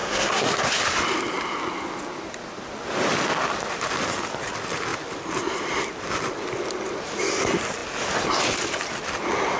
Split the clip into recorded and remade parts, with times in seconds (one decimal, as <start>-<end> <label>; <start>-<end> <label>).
0.0-0.6 remade; 0.6-9.6 recorded

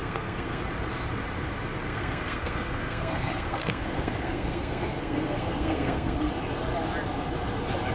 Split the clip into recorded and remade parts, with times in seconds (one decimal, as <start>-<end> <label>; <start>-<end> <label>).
0.0-0.6 remade; 0.6-1.9 recorded; 1.9-6.3 remade; 6.3-7.9 recorded

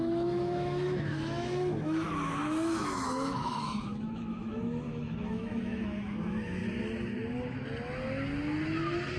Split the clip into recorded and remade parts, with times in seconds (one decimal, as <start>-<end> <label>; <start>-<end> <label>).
0.0-6.6 remade; 6.6-9.2 recorded

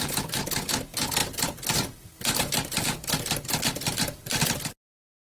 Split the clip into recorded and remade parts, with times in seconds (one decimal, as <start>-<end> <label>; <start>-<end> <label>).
0.0-5.3 recorded

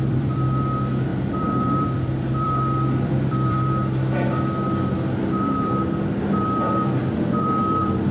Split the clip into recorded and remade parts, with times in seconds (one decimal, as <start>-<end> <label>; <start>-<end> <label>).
0.0-3.8 remade; 3.8-5.3 recorded; 5.3-8.1 remade

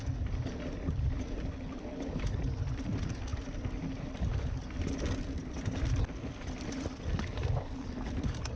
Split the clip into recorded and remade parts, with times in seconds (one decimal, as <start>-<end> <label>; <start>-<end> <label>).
0.0-8.6 recorded

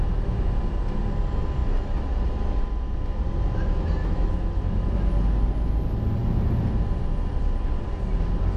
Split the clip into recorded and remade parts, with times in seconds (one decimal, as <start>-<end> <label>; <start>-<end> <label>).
0.0-4.0 recorded; 4.0-5.1 remade; 5.1-8.6 recorded